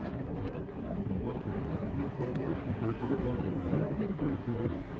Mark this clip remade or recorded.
remade